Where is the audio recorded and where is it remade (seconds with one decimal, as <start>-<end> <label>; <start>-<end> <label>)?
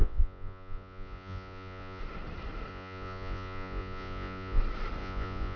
0.0-2.0 remade; 2.0-2.7 recorded; 2.7-4.6 remade; 4.6-5.0 recorded; 5.0-5.6 remade